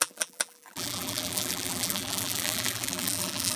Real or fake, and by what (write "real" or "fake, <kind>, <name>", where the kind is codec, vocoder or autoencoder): fake, vocoder, BigVGAN v2